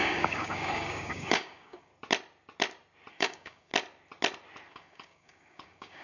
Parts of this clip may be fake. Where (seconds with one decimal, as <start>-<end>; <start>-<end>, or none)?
0.0-1.9; 3.1-3.7; 4.7-6.0